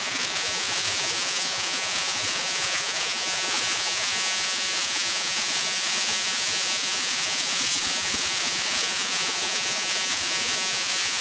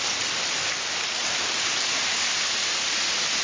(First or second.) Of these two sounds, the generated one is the first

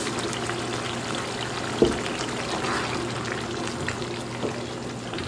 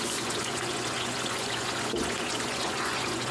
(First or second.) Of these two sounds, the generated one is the second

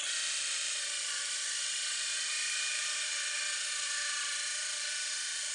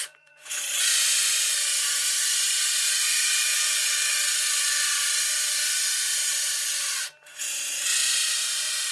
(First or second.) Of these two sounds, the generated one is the second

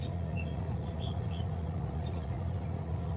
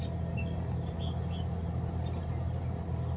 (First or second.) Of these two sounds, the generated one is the first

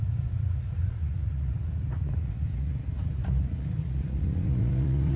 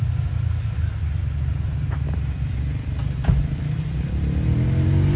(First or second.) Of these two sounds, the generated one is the first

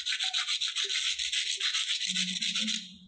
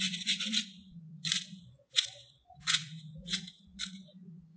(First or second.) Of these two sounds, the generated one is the second